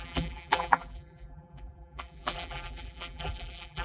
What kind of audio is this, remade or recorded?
remade